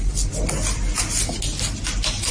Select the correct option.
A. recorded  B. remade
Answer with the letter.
A